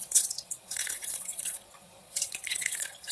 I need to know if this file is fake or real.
fake